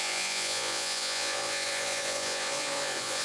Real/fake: fake